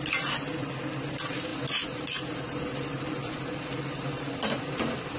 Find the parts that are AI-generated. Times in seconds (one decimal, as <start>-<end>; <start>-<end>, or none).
none